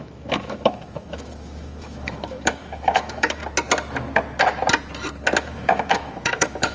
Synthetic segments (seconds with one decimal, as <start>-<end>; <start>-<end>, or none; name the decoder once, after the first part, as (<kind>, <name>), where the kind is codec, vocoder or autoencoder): 0.0-3.4 (autoencoder, DAC-VAE); 5.4-6.7

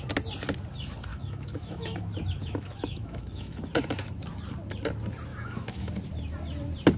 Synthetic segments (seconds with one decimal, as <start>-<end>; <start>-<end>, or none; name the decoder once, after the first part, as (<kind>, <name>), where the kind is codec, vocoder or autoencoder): 1.1-2.0 (autoencoder, DAC-VAE); 2.4-3.7; 5.3-5.9

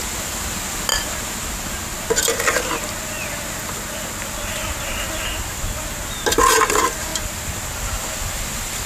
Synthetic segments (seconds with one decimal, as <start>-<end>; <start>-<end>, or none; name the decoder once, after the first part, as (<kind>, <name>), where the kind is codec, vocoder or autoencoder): none

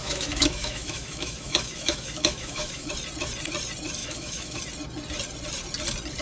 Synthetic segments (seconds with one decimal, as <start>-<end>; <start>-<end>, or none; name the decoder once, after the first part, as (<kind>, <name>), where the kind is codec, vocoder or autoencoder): 0.0-2.9 (autoencoder, DAC-VAE); 4.0-4.6

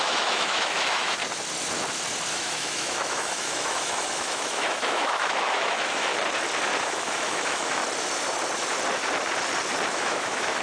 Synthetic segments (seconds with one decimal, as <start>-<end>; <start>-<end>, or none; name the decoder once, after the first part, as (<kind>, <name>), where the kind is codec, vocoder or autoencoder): 0.0-1.2 (autoencoder, DAC-VAE); 2.3-6.1; 6.8-7.8; 9.9-10.6

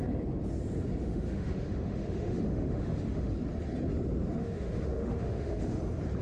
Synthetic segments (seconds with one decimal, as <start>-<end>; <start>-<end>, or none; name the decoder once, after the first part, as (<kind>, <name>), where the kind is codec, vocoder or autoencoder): 1.0-3.3 (autoencoder, DAC-VAE); 4.4-5.8

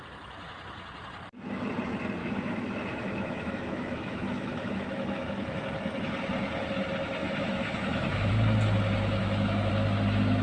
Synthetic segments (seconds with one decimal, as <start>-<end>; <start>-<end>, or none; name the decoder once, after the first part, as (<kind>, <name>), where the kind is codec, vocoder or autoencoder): 2.2-5.6 (autoencoder, DAC-VAE); 7.2-8.3; 9.2-9.7